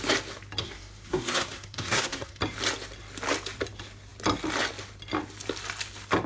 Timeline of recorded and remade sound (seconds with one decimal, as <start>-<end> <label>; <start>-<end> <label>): 0.0-0.6 recorded; 0.6-2.4 remade; 2.4-6.3 recorded

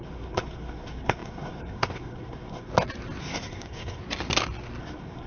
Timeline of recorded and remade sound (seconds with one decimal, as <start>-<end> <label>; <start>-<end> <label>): 0.0-2.7 remade; 2.7-3.2 recorded; 3.2-4.0 remade; 4.0-4.8 recorded; 4.8-5.3 remade

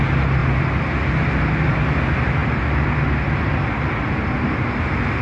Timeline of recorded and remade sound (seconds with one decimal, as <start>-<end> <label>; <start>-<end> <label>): 0.0-5.2 recorded

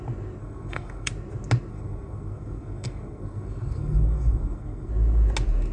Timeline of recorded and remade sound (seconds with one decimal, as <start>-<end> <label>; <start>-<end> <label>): 0.0-0.4 recorded; 0.4-1.1 remade; 1.1-1.7 recorded; 1.7-4.9 remade; 4.9-5.7 recorded

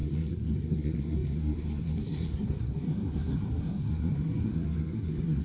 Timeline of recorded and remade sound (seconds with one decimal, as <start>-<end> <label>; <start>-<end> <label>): 0.0-5.4 remade

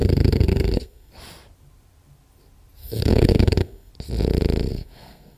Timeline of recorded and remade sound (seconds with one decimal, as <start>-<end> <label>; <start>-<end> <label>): 0.0-1.1 remade; 1.1-2.8 recorded; 2.8-3.9 remade; 3.9-4.7 recorded; 4.7-5.4 remade

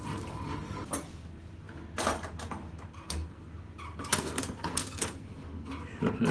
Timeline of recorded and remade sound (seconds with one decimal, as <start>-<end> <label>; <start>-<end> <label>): 0.0-2.9 recorded; 2.9-3.5 remade; 3.5-4.1 recorded; 4.1-5.7 remade; 5.7-6.3 recorded